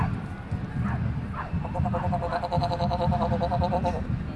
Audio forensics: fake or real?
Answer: real